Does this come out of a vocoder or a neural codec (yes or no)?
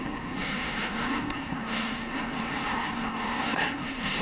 yes